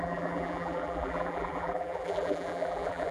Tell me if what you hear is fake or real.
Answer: fake